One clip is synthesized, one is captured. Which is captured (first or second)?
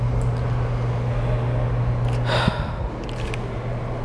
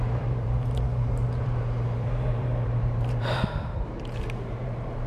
first